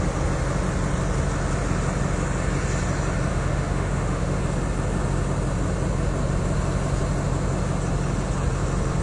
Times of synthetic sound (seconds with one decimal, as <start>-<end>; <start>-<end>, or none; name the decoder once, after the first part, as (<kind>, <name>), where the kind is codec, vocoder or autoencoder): 3.3-4.4 (autoencoder, DAC-VAE)

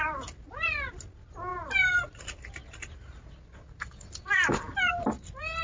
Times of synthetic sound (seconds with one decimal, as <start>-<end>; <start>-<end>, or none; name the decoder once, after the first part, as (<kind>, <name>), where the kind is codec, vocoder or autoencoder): none

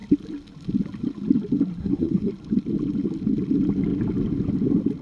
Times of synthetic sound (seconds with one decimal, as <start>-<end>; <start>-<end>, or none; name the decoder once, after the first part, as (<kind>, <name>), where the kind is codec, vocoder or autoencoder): 1.8-2.3 (codec, SNAC)

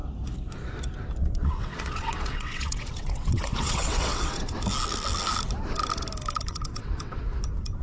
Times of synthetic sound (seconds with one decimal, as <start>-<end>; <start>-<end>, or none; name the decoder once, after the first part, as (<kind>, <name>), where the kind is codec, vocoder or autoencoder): 1.2-4.5 (vocoder, WaveNeXt); 6.5-7.2

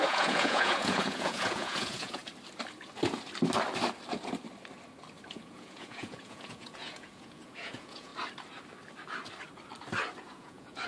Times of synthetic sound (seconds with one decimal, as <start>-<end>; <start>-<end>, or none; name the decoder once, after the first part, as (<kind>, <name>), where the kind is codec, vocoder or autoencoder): 0.0-2.2 (vocoder, Vocos); 5.3-8.1; 10.2-10.9

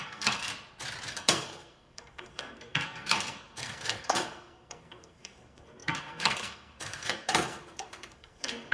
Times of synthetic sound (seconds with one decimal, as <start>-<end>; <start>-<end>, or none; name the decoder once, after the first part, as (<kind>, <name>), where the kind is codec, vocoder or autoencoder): 0.0-0.5 (codec, SNAC); 1.1-8.7